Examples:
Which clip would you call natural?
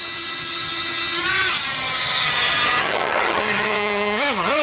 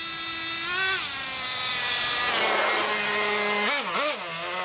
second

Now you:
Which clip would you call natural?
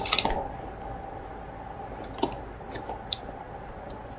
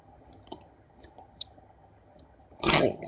first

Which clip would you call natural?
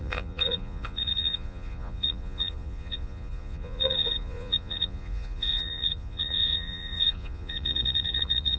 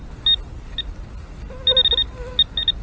second